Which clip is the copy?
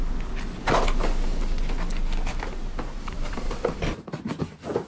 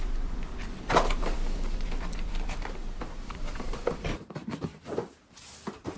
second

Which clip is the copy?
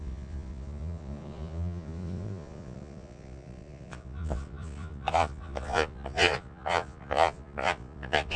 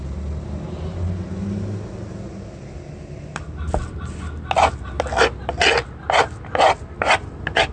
first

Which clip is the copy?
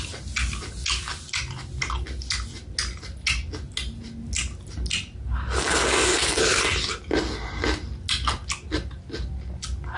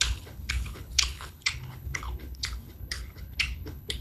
second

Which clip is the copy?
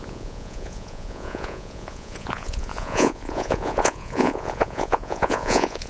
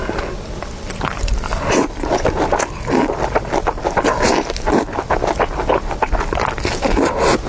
first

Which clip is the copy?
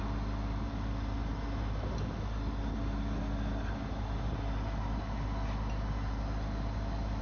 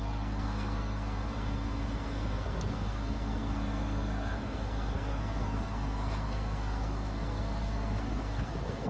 second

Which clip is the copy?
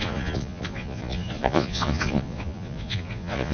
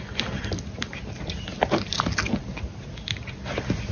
first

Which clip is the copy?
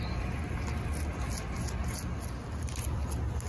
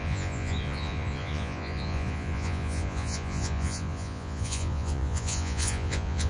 second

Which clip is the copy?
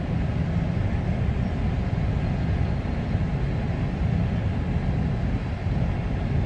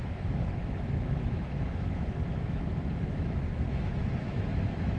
second